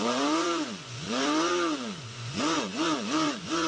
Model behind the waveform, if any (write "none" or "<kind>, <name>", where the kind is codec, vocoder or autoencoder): vocoder, Vocos